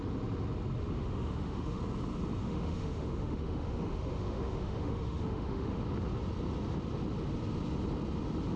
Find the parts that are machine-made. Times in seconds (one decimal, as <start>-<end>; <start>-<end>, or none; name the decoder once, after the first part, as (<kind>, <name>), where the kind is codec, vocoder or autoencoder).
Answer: 0.8-1.8 (autoencoder, DAC-VAE); 2.4-5.8